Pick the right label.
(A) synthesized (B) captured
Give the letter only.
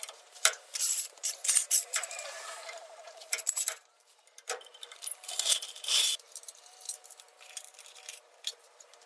A